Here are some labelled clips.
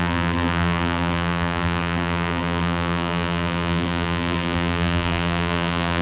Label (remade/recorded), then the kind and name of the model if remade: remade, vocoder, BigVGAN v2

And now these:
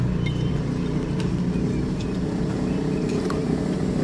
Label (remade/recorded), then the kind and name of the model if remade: recorded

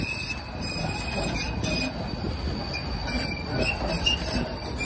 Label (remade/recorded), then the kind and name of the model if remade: recorded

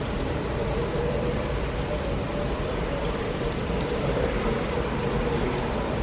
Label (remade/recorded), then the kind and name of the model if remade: remade, vocoder, BigVGAN v2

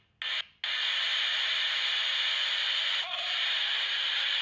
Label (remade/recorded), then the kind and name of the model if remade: recorded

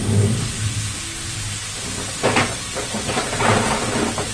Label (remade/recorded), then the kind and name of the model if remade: recorded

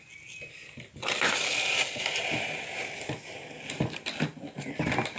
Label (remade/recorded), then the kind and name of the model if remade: recorded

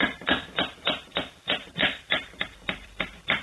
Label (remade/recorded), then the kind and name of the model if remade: remade, vocoder, BigVGAN v2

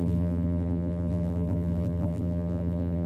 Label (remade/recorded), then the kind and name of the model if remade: remade, vocoder, BigVGAN v2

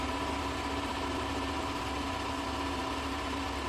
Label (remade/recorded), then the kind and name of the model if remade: remade, vocoder, BigVGAN v2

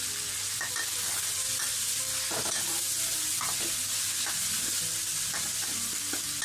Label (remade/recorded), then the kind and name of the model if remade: recorded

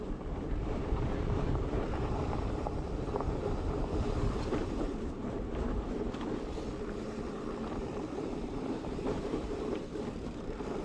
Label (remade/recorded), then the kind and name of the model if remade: remade, vocoder, BigVGAN v2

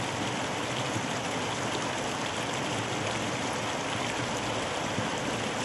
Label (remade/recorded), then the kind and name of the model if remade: recorded